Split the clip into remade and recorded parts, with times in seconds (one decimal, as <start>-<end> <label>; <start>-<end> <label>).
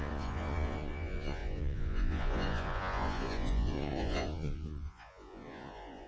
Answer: 0.0-6.1 remade